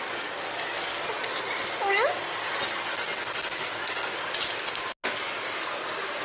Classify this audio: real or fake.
real